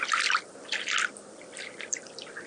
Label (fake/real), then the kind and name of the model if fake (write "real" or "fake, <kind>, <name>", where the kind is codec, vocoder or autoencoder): real